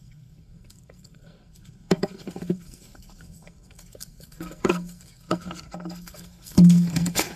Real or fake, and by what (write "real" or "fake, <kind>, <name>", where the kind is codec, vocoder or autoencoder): fake, codec, SNAC